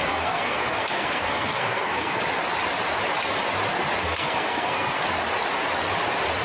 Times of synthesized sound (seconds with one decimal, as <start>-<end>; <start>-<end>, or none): 0.0-2.2; 4.0-5.0